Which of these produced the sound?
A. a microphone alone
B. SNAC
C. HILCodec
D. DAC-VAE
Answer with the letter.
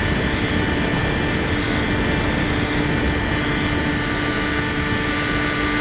A